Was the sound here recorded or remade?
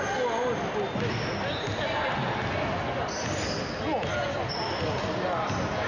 recorded